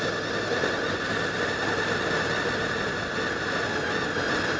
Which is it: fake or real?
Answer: real